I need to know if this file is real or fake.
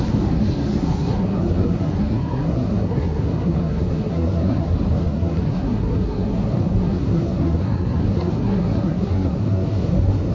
fake